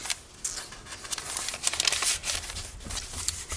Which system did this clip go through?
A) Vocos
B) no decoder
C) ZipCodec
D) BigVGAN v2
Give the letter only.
B